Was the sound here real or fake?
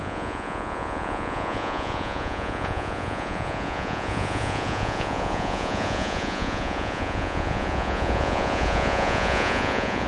fake